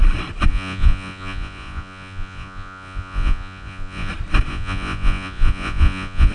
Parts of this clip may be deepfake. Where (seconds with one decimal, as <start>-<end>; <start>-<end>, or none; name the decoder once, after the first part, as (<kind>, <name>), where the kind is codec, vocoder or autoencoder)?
0.5-4.1 (vocoder, Vocos); 4.5-6.3